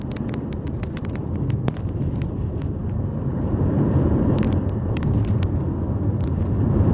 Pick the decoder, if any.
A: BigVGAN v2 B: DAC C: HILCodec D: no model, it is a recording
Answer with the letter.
A